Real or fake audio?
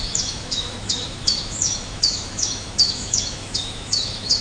fake